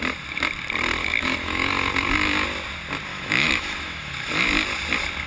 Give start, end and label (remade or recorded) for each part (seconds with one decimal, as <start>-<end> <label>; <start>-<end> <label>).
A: 0.0-1.0 recorded; 1.0-1.7 remade; 1.7-3.1 recorded; 3.1-4.3 remade; 4.3-5.3 recorded